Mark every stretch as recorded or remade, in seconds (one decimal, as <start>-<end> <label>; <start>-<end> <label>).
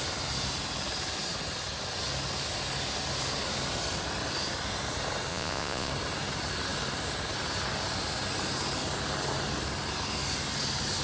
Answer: 0.0-5.3 recorded; 5.3-5.9 remade; 5.9-11.0 recorded